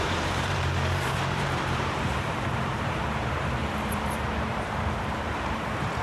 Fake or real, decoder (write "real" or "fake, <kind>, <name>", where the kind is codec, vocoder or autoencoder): fake, vocoder, BigVGAN v2